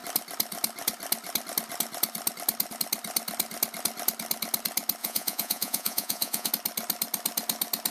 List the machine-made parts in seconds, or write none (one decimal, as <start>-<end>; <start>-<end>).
5.0-6.5